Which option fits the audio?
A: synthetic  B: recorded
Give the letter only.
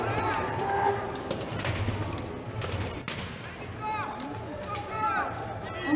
B